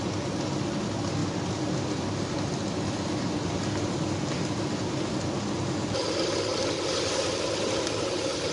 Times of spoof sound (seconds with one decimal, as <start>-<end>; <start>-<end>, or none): none